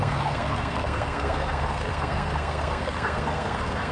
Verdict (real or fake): fake